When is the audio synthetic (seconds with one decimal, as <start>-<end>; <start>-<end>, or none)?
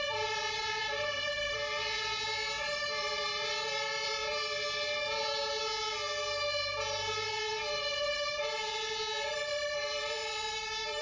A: 0.0-1.6; 2.6-4.2; 9.3-11.0